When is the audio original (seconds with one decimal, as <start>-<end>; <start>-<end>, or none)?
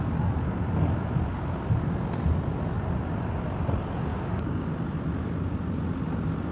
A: 0.0-4.1; 4.7-6.5